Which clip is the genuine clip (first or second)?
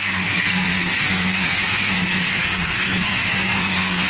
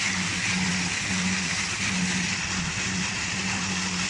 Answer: second